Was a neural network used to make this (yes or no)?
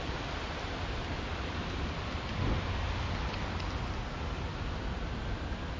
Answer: no